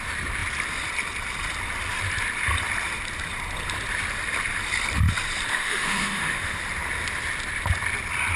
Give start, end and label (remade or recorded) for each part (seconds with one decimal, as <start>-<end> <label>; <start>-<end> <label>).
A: 0.0-5.5 recorded; 5.5-6.6 remade; 6.6-8.4 recorded